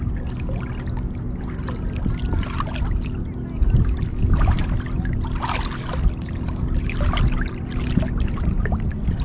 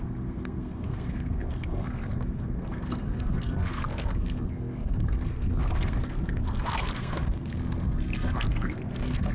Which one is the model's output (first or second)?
second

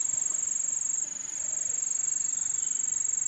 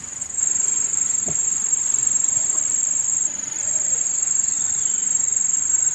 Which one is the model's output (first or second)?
second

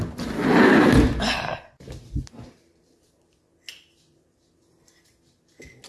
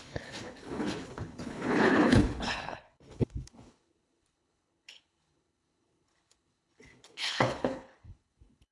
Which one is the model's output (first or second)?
second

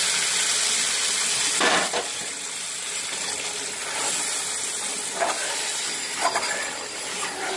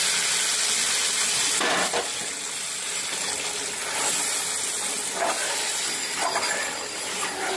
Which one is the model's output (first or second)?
first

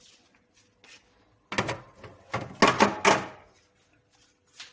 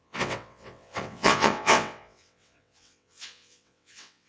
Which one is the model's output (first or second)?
second